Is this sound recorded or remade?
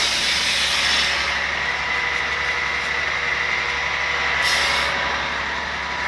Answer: recorded